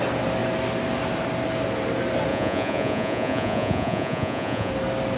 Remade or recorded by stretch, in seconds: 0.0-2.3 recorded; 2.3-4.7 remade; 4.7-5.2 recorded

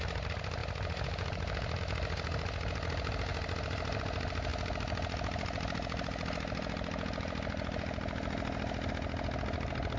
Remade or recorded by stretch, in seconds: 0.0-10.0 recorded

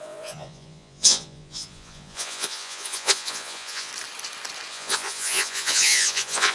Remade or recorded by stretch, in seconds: 0.0-3.9 remade; 3.9-4.7 recorded; 4.7-6.5 remade